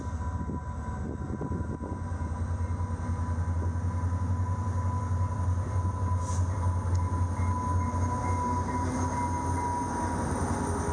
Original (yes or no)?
yes